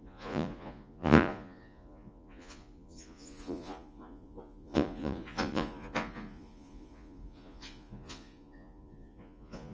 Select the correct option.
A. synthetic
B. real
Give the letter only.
A